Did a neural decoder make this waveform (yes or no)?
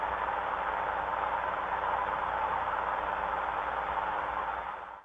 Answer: no